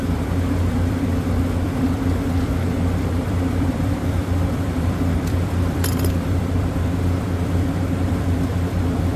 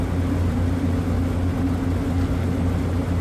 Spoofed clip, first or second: first